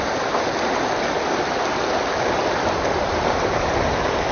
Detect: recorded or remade recorded